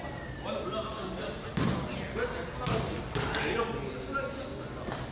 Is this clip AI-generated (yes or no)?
no